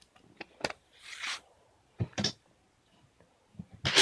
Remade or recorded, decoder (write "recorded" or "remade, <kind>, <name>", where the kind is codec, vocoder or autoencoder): recorded